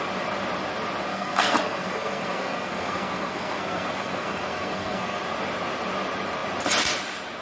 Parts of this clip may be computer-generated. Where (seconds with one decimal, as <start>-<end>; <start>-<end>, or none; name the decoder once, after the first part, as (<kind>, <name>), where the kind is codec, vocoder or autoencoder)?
1.1-5.2 (codec, SNAC)